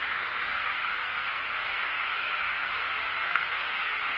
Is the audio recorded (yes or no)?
no